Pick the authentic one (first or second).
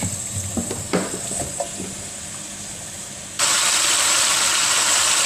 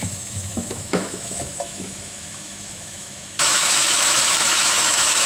first